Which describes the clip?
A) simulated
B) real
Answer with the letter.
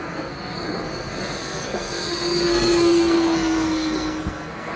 A